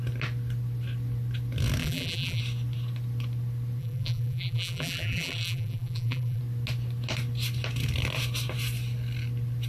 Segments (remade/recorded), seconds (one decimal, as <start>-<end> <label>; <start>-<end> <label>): 0.0-1.8 recorded; 1.8-2.4 remade; 2.4-3.8 recorded; 3.8-6.4 remade; 6.4-9.7 recorded